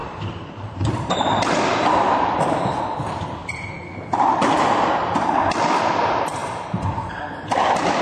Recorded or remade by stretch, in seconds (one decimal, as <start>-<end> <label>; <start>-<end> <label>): 0.0-1.4 remade; 1.4-6.4 recorded; 6.4-7.1 remade; 7.1-8.0 recorded

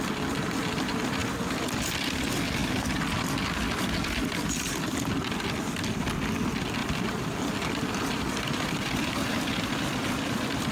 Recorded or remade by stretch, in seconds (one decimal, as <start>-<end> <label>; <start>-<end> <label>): 0.0-6.8 recorded; 6.8-10.7 remade

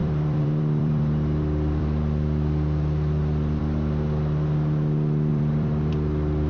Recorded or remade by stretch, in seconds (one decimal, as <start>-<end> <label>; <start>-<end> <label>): 0.0-3.6 remade; 3.6-5.3 recorded; 5.3-5.9 remade; 5.9-6.5 recorded